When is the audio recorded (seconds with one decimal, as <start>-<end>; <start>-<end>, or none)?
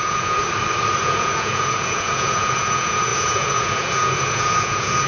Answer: 0.4-1.0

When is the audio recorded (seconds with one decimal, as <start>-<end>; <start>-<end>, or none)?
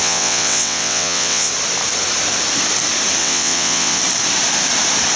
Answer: 1.5-3.2; 4.0-5.2